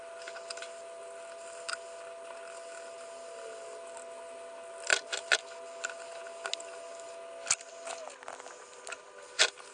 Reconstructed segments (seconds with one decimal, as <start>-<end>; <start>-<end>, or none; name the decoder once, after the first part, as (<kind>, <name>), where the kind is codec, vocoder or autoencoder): none